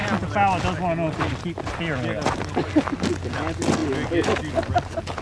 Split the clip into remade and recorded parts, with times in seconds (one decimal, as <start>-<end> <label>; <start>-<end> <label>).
0.0-5.2 recorded